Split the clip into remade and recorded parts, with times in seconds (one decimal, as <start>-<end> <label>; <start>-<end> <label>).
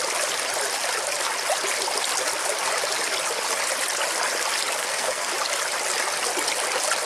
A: 0.0-4.8 recorded; 4.8-5.3 remade; 5.3-7.1 recorded